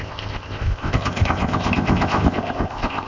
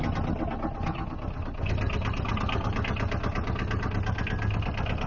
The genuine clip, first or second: second